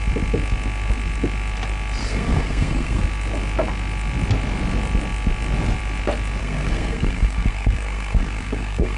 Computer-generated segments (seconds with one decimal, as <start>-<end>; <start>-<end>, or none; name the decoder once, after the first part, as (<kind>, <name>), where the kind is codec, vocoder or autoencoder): 2.0-3.0 (codec, SNAC); 6.4-9.0